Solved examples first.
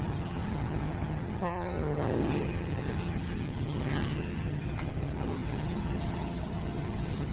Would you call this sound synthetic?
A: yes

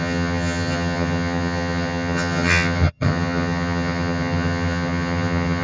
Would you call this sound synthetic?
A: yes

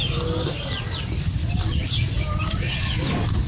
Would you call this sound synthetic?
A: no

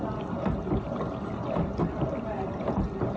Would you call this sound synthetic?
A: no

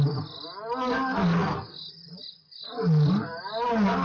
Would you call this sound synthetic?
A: no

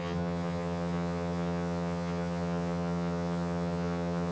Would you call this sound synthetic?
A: yes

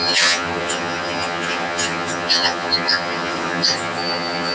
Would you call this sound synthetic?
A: yes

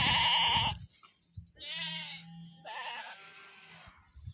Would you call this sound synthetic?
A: no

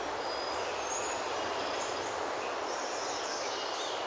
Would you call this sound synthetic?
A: no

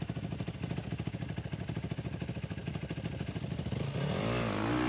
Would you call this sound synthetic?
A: no